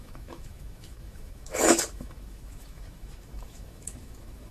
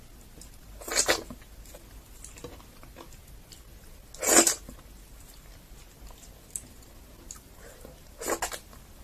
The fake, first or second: first